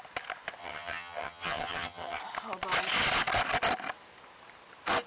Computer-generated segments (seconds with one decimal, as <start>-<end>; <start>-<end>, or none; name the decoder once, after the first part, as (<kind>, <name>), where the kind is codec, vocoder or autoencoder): 0.6-2.2 (vocoder, HiFi-GAN)